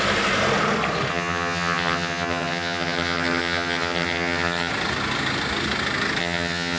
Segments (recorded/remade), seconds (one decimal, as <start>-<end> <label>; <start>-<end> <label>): 0.0-1.1 recorded; 1.1-4.7 remade; 4.7-6.2 recorded; 6.2-6.8 remade